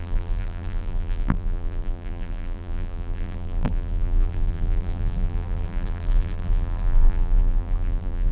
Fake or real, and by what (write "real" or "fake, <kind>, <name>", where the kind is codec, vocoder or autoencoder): fake, vocoder, BigVGAN v2